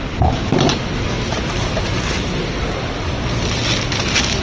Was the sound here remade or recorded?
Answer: recorded